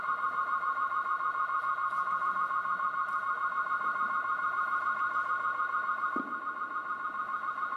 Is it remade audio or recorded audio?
recorded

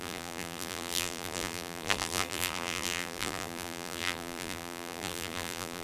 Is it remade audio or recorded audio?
remade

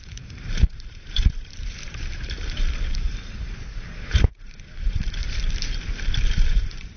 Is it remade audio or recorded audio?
remade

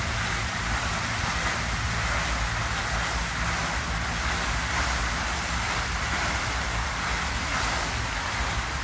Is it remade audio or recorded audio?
recorded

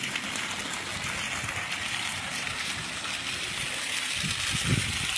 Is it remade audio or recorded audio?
recorded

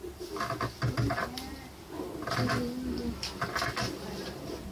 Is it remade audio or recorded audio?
remade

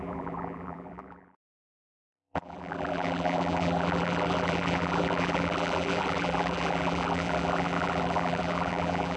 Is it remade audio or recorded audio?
remade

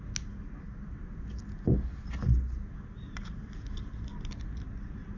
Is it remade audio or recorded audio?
recorded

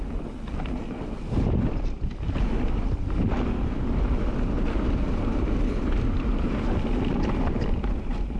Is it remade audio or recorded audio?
remade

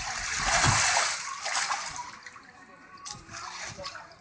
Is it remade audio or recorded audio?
recorded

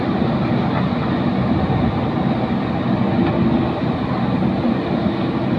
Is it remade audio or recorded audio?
recorded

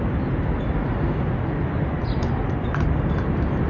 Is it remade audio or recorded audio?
recorded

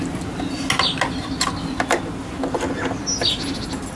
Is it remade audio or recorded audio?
recorded